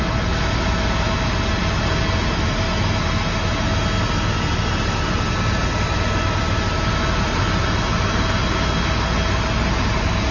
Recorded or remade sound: recorded